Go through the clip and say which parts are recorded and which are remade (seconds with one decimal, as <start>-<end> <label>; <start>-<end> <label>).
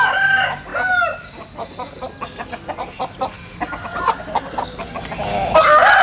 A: 0.0-6.0 recorded